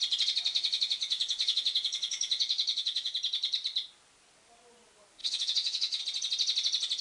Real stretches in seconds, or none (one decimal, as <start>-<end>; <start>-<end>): 0.0-0.5; 3.1-5.2; 6.0-7.0